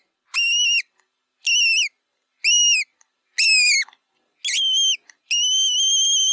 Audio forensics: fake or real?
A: real